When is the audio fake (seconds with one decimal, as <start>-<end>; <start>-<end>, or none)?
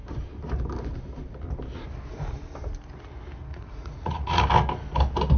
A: 3.5-4.4